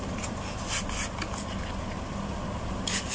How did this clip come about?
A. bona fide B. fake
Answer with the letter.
A